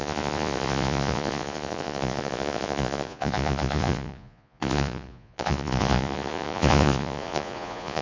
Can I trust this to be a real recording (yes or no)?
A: no